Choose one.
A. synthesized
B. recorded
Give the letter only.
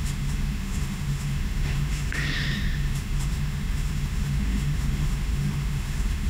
A